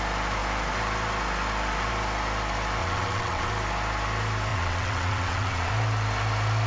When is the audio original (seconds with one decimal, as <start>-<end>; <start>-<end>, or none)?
0.0-2.8; 3.5-4.5; 5.7-6.7